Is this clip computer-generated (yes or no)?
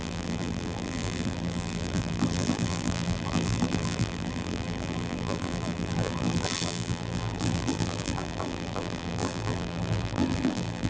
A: yes